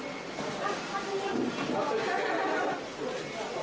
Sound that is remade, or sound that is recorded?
recorded